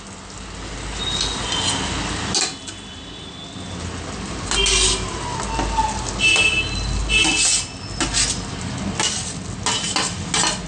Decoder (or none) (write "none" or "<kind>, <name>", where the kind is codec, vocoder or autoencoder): none